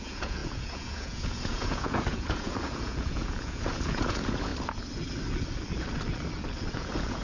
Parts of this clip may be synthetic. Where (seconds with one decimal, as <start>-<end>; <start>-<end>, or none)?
0.0-4.5; 6.7-7.2